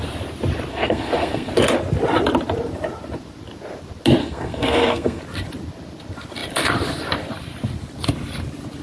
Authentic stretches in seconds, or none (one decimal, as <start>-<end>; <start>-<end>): 0.0-0.7; 1.5-4.2; 5.2-8.8